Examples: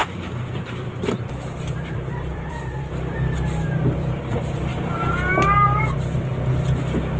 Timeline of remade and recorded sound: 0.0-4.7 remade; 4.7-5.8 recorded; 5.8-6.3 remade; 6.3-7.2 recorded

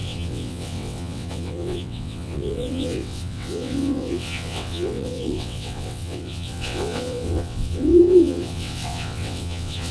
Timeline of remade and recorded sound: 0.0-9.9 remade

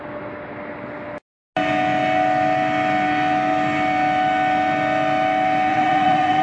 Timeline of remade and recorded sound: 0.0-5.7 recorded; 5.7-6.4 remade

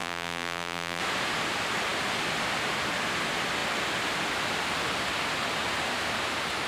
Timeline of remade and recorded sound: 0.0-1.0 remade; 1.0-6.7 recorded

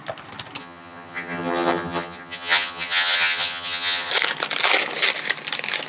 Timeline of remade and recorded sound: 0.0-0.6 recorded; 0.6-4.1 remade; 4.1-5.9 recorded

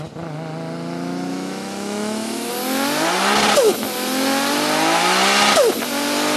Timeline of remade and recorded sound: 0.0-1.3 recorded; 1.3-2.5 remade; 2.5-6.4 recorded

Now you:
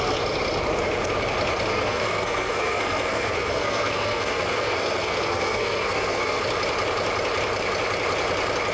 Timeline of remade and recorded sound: 0.0-1.7 recorded; 1.7-6.4 remade; 6.4-8.7 recorded